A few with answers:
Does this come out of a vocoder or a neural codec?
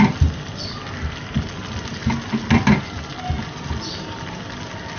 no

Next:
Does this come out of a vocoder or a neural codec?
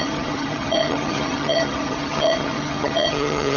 yes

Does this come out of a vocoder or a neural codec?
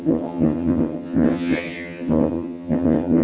yes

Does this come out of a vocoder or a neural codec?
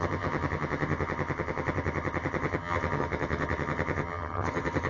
yes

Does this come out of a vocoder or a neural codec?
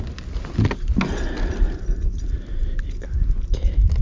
no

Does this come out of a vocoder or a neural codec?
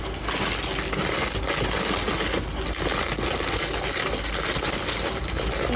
no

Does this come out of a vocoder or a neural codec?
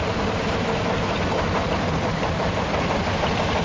no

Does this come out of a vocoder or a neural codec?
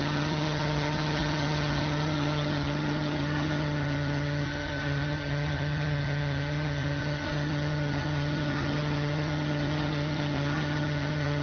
yes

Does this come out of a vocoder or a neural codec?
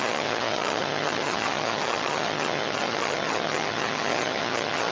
yes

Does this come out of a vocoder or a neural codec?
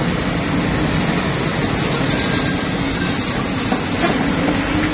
no